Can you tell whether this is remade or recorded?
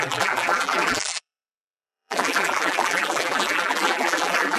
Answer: remade